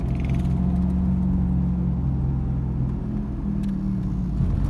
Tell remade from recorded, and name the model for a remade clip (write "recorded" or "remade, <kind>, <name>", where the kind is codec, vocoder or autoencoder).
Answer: recorded